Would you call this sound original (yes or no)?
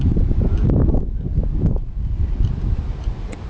yes